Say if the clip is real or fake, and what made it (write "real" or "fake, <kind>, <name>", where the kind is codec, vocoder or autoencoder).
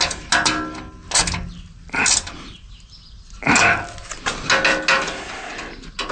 real